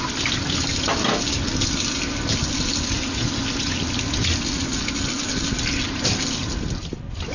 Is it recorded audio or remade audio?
recorded